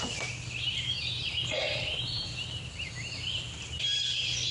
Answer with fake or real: real